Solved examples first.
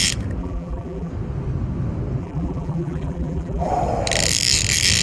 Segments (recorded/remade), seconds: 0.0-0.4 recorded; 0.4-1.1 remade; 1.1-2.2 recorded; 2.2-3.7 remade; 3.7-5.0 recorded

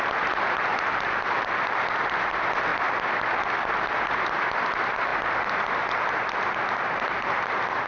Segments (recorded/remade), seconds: 0.0-7.9 recorded

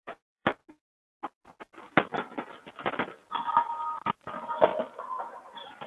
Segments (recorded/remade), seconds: 0.0-0.6 remade; 0.6-4.1 recorded; 4.1-4.7 remade; 4.7-5.2 recorded; 5.2-5.9 remade

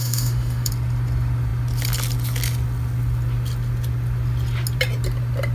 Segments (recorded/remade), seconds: 0.0-0.7 remade; 0.7-5.5 recorded

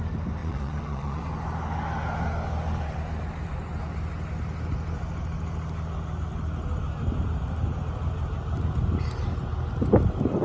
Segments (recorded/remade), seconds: 0.0-0.4 recorded; 0.4-1.2 remade; 1.2-10.4 recorded

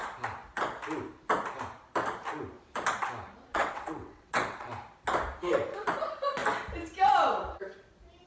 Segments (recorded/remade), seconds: 0.0-3.5 recorded; 3.5-4.7 remade; 4.7-8.3 recorded

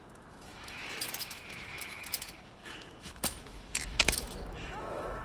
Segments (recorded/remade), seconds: 0.0-5.2 remade

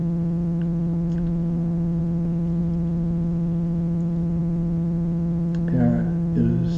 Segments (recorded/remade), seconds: 0.0-2.6 recorded; 2.6-4.4 remade; 4.4-6.8 recorded